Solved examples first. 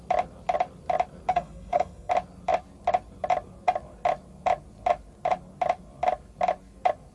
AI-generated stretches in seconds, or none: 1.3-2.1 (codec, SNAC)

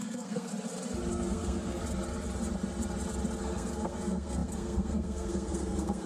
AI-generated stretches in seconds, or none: 0.0-0.5 (codec, SNAC); 1.1-1.8; 3.4-6.1

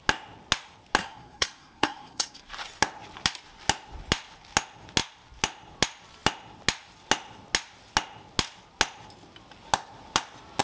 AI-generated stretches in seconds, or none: 1.0-2.4 (codec, SNAC)

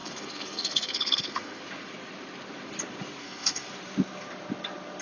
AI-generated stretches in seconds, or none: 0.0-1.6 (codec, SNAC); 3.2-3.7

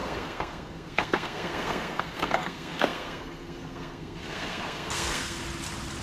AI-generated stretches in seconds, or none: 0.0-5.4 (codec, SNAC)